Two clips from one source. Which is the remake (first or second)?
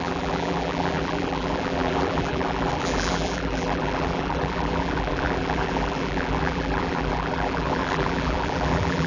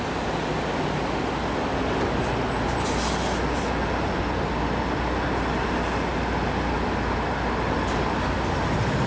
first